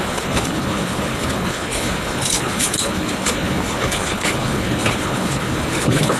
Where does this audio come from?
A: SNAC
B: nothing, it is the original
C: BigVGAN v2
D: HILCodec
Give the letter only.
D